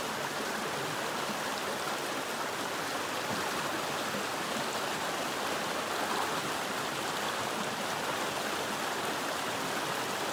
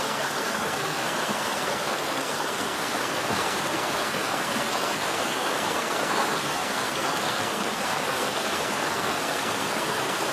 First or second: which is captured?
first